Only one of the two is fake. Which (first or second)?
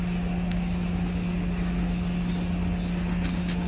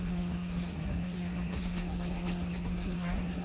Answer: second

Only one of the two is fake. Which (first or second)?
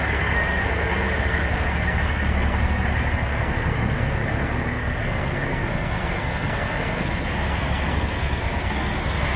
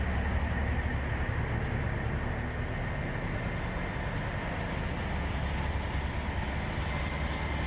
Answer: first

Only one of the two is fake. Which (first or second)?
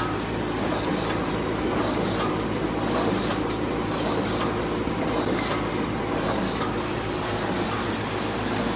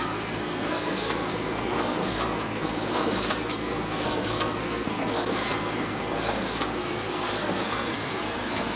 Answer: second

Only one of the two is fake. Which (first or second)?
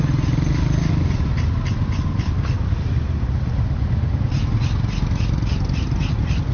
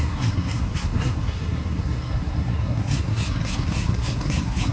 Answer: second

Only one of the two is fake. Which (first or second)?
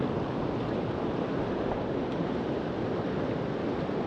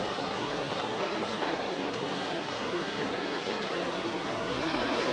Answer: second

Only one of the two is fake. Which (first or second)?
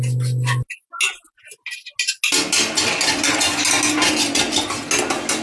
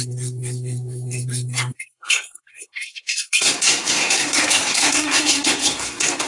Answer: second